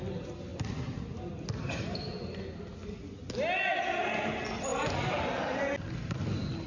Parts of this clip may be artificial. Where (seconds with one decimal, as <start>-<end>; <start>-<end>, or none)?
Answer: 4.7-5.6